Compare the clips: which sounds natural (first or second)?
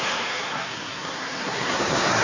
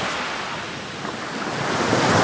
second